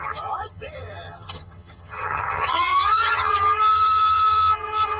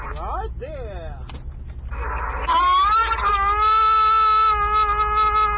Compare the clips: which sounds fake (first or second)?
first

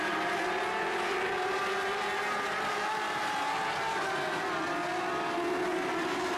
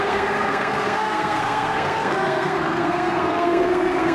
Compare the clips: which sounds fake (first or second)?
second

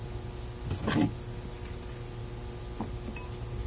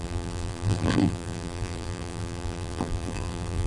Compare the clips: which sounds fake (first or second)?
second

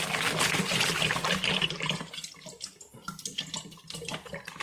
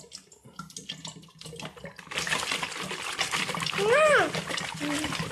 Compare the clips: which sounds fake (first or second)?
first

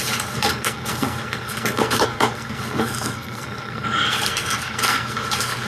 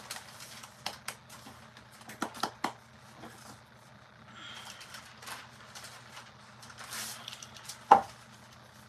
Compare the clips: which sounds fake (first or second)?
first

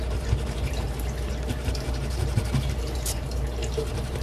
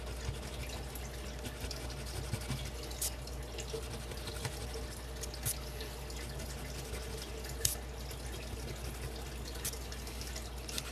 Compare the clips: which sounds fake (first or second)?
first